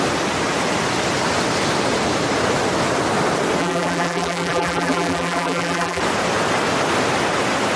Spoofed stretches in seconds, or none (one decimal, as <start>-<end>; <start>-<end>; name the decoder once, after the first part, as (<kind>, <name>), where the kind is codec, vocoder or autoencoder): 3.6-6.0 (vocoder, BigVGAN v2)